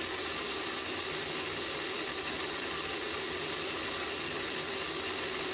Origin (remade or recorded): recorded